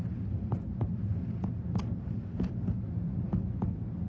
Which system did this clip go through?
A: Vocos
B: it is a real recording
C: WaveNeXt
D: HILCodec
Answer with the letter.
B